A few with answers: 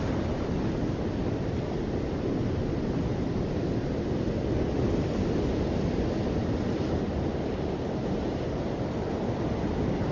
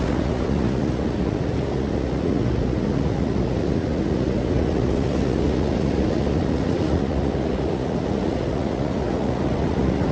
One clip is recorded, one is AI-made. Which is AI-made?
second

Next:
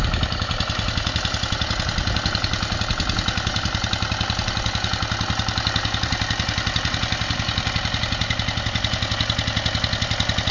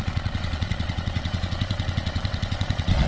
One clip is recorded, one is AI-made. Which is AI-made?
second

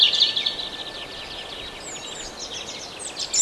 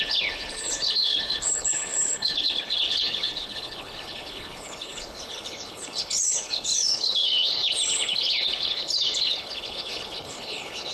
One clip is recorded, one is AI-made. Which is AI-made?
second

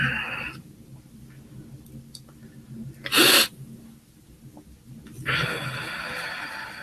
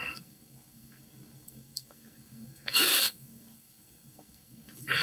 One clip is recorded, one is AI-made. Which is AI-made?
second